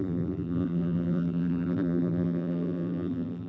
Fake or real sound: fake